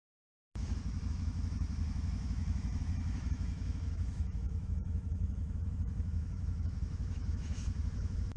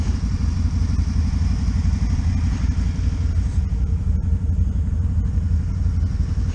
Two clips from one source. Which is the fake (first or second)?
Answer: first